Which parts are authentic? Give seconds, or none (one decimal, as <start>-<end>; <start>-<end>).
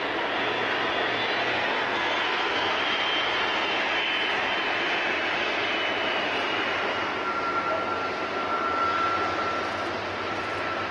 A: 0.0-1.4; 2.8-10.9